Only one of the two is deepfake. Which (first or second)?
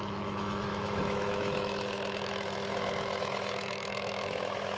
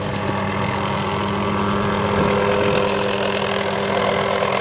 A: first